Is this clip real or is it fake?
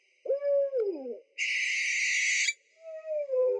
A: real